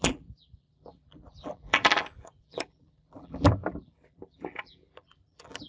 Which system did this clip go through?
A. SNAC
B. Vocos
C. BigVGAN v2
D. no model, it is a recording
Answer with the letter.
C